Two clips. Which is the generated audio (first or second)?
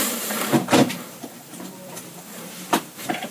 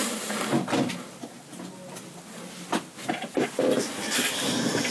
first